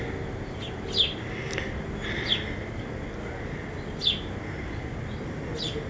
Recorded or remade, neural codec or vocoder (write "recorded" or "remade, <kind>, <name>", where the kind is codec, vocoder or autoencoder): recorded